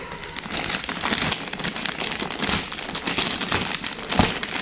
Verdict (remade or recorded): recorded